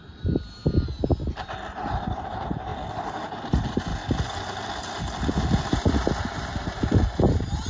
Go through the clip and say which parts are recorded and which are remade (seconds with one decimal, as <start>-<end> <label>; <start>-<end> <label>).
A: 0.0-0.6 remade; 0.6-1.8 recorded; 1.8-2.7 remade; 2.7-3.5 recorded; 3.5-3.9 remade; 3.9-6.2 recorded; 6.2-7.7 remade